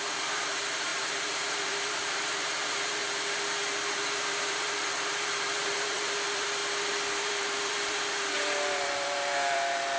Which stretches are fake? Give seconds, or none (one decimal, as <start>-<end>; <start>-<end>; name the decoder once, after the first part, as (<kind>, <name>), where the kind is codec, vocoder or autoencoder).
0.0-3.0 (vocoder, BigVGAN v2); 3.9-6.6; 7.2-10.0